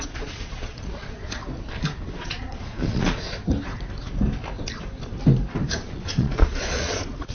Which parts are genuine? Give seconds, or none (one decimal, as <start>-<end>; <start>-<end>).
1.4-2.1; 3.4-5.8